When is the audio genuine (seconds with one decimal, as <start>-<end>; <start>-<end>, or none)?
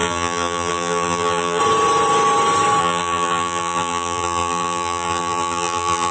1.6-2.8